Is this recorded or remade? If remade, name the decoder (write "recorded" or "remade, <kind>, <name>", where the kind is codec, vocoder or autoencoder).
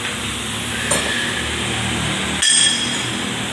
recorded